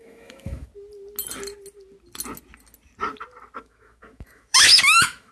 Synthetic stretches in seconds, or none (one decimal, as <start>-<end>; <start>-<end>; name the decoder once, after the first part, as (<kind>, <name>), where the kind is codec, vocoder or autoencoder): 0.0-0.7 (autoencoder, DAC-VAE); 3.6-5.3